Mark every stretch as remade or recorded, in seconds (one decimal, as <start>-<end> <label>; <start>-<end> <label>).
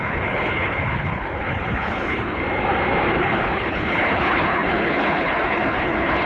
0.0-2.4 remade; 2.4-3.2 recorded; 3.2-6.3 remade